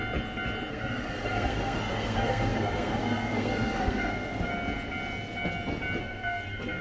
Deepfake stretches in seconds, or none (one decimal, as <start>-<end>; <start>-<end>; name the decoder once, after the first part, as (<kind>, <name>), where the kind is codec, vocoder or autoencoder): 0.7-4.5 (codec, SNAC); 6.0-6.8